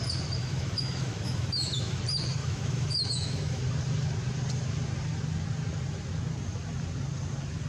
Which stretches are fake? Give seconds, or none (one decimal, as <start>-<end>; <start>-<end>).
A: 0.4-2.0; 2.4-3.6